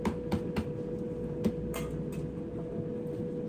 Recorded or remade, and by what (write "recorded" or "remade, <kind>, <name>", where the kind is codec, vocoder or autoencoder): recorded